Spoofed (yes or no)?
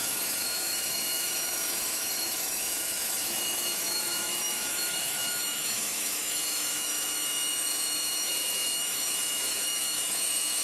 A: yes